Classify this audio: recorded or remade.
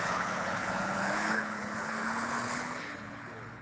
remade